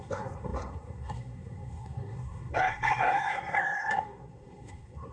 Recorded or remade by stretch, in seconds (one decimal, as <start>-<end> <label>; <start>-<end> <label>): 0.0-5.1 remade